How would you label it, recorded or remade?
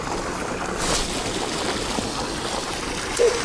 recorded